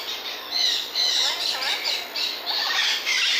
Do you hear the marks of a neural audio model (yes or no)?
no